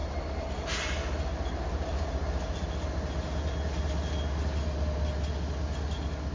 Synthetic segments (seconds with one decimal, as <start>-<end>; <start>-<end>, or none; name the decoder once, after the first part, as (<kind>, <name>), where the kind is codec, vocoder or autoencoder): none